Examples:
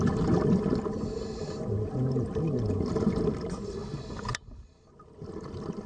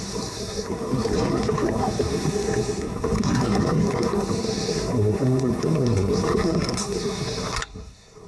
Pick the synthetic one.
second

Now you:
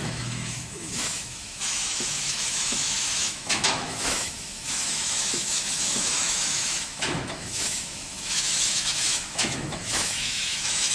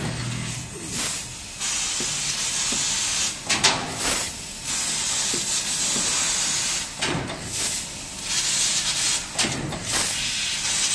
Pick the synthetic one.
first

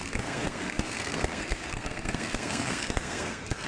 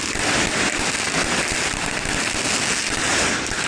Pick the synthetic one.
first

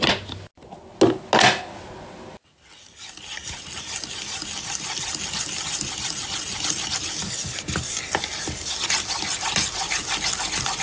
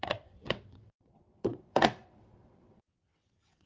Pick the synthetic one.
second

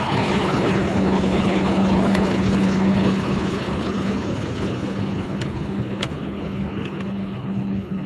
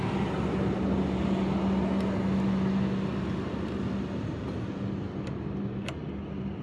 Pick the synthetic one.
first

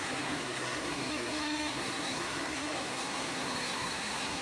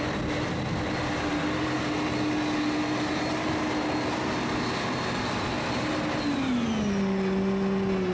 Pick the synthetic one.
first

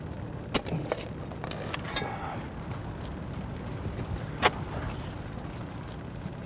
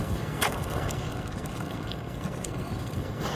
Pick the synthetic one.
second